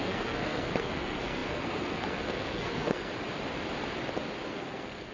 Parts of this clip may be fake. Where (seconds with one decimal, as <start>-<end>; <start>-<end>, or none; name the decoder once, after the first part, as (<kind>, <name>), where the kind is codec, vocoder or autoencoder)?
0.0-3.1 (codec, SNAC); 4.5-5.1